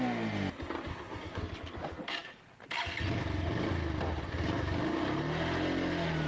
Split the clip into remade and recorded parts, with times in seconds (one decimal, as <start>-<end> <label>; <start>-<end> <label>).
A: 0.0-0.9 recorded; 0.9-1.4 remade; 1.4-6.3 recorded